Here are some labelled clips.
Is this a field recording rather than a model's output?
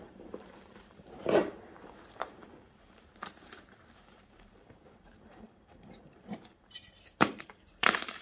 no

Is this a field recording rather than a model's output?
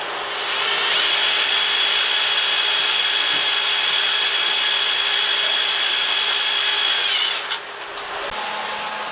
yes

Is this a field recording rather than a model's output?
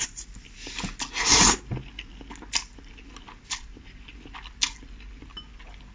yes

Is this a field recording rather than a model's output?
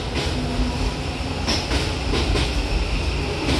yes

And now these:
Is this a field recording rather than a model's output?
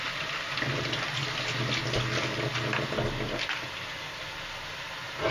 yes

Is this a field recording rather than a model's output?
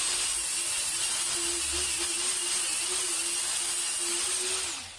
yes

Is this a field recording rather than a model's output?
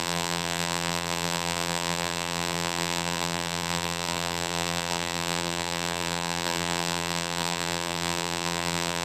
no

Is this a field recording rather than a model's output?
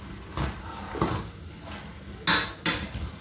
yes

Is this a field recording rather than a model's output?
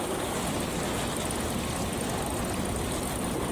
no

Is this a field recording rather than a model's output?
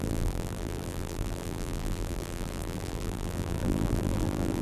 no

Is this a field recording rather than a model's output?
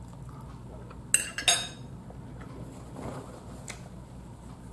yes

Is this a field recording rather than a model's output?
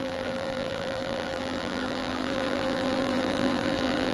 no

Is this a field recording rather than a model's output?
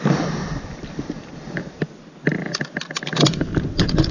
yes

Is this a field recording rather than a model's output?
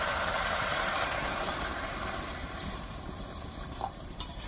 no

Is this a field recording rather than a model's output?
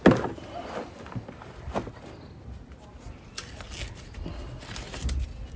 yes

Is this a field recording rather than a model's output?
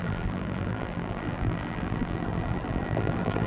no